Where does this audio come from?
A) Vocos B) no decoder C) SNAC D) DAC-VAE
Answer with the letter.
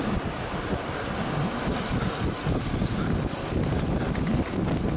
B